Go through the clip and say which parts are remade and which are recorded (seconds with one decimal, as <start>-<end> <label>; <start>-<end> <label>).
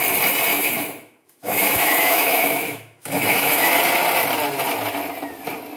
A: 0.0-0.5 recorded; 0.5-3.8 remade; 3.8-5.8 recorded